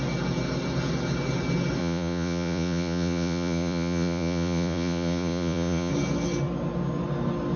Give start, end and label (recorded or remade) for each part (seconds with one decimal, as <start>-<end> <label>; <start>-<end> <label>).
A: 0.0-1.8 recorded; 1.8-5.9 remade; 5.9-7.6 recorded